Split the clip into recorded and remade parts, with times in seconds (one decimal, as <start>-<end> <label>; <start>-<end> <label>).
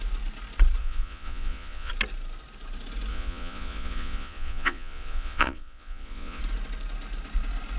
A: 0.0-0.8 recorded; 0.8-1.9 remade; 1.9-3.1 recorded; 3.1-6.4 remade; 6.4-7.8 recorded